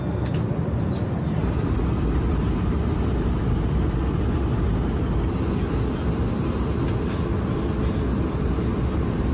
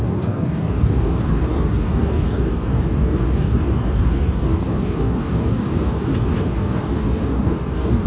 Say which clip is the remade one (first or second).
second